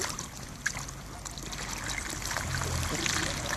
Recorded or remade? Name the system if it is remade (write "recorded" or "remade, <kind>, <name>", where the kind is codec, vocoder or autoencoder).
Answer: recorded